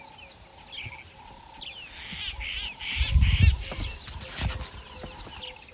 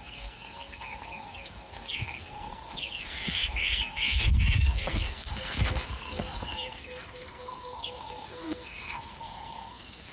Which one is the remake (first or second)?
second